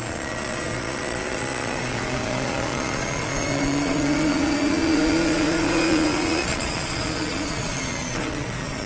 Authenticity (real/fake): fake